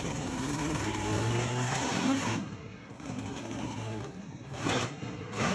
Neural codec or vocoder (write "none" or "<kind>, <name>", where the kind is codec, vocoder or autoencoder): codec, SNAC